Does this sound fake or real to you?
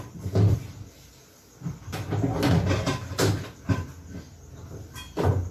real